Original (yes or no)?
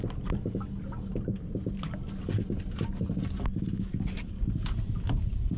yes